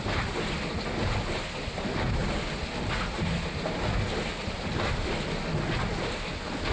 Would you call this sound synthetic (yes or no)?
no